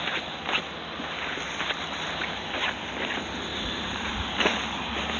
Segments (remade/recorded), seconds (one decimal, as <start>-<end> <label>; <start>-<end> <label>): 0.0-3.5 recorded; 3.5-4.3 remade; 4.3-5.2 recorded

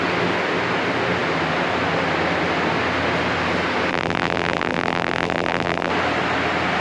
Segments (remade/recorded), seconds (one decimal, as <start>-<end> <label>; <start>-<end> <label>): 0.0-3.9 recorded; 3.9-5.9 remade; 5.9-6.8 recorded

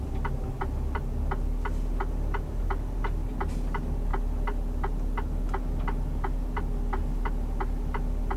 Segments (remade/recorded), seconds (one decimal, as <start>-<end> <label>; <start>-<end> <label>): 0.0-8.4 recorded

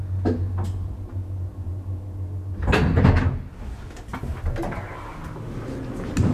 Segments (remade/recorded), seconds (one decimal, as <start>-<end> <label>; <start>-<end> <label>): 0.0-6.3 recorded